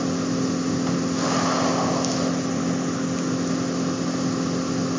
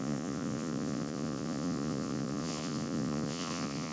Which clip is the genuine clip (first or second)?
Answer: first